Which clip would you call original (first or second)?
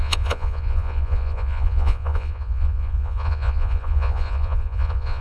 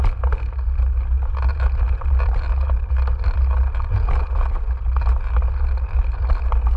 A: second